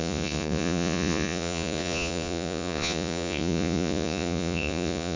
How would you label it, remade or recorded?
remade